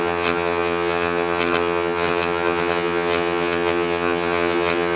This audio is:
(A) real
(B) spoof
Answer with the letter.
B